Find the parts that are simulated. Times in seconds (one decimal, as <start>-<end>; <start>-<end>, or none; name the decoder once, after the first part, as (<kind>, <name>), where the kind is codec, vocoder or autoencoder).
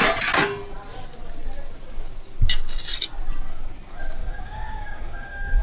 4.2-5.6 (codec, DAC)